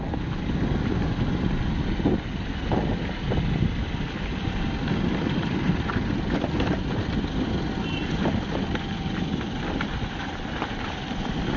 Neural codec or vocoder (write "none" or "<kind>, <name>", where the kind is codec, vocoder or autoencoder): none